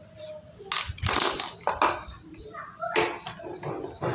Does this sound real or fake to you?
real